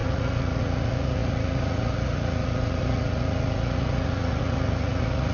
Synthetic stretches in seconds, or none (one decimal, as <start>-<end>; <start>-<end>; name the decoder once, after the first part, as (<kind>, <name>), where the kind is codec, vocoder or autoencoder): 0.0-5.3 (vocoder, Vocos)